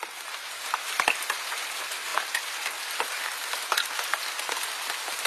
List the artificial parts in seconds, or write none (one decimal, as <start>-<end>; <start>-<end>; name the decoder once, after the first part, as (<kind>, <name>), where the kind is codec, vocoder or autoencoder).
none